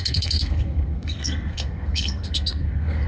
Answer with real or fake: fake